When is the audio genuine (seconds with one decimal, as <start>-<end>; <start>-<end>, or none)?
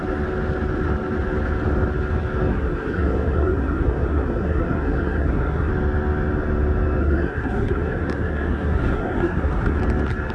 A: 0.0-2.5; 5.7-7.0; 9.8-10.3